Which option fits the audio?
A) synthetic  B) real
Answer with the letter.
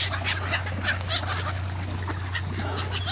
B